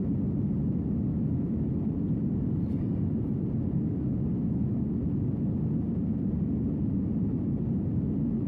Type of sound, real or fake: real